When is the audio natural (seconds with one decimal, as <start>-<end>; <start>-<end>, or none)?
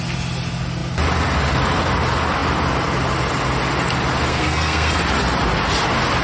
0.0-4.3; 5.0-6.2